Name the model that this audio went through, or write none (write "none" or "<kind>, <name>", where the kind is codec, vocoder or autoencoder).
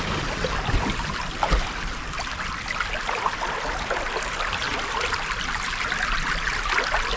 none